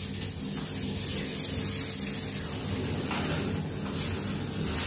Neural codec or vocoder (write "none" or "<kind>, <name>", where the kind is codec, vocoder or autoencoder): none